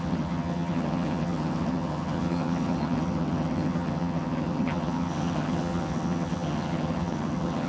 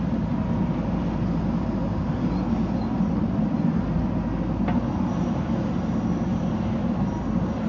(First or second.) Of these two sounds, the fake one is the first